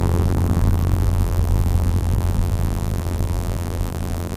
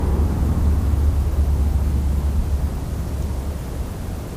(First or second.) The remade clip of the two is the first